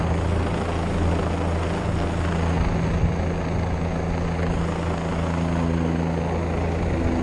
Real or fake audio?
real